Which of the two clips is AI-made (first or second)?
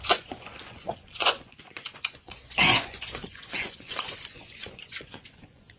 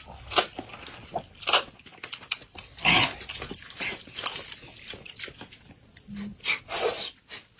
first